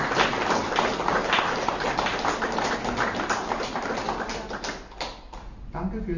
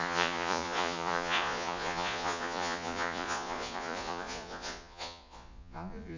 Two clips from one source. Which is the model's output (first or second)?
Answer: second